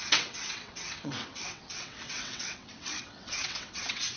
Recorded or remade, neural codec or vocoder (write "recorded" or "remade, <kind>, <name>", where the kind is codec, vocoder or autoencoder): remade, vocoder, WaveNeXt